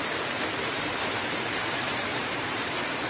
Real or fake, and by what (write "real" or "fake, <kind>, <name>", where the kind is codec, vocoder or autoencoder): fake, vocoder, BigVGAN v2